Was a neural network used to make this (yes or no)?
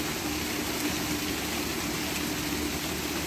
no